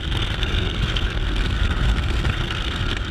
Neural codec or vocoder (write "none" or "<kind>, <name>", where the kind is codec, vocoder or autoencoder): codec, SNAC